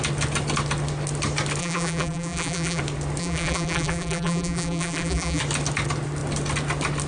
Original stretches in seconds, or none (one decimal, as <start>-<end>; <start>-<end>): 0.0-1.6; 2.8-3.2; 5.4-7.1

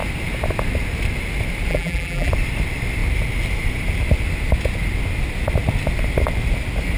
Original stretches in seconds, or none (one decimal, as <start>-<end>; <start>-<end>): 0.0-1.7; 2.3-7.0

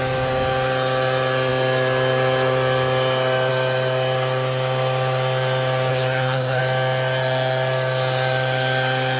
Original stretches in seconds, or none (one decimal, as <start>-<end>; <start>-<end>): 0.0-5.9; 6.6-9.2

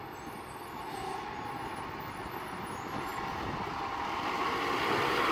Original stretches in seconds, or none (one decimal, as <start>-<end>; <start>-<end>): 0.0-5.3

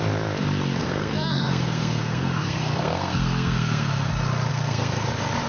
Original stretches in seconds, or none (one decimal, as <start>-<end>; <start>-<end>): 0.0-0.8; 4.1-4.5; 5.1-5.5

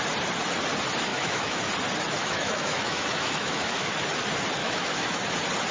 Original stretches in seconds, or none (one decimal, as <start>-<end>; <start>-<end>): 0.0-1.1; 1.6-2.2; 3.9-4.6; 5.2-5.7

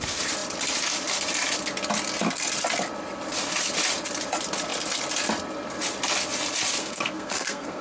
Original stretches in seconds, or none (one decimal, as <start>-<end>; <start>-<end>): 0.0-6.8